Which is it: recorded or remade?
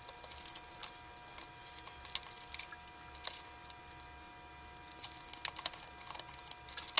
recorded